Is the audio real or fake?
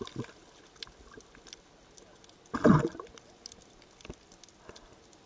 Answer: real